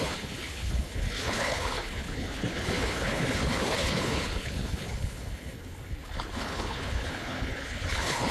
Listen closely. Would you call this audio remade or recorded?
remade